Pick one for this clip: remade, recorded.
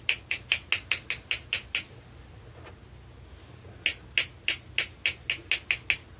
recorded